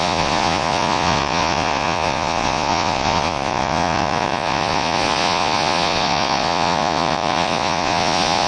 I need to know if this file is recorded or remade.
remade